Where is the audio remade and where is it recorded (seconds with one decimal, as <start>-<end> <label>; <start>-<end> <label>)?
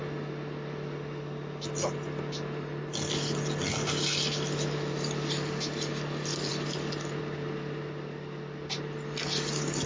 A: 0.0-9.9 recorded